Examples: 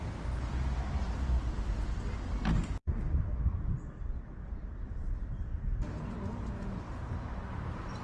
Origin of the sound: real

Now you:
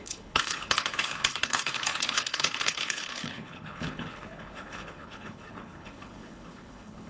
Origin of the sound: fake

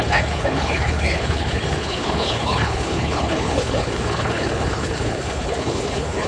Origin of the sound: fake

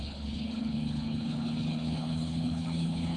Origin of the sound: fake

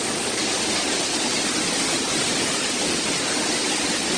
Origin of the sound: real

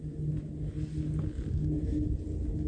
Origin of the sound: real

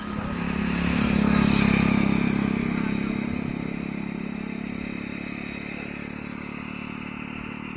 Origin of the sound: real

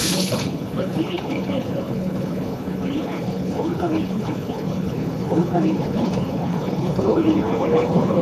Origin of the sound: fake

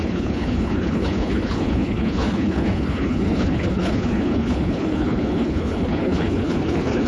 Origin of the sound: fake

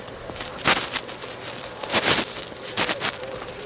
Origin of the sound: real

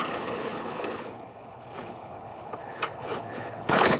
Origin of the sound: fake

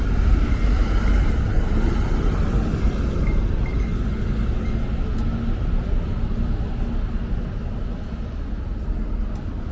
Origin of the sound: real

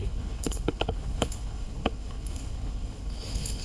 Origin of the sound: fake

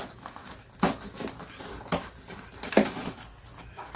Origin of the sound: real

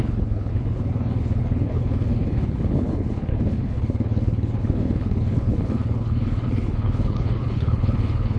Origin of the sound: fake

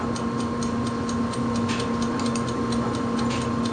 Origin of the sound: real